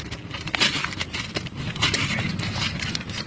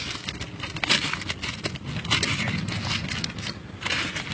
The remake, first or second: first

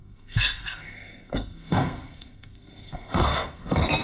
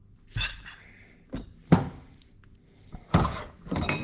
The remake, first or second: first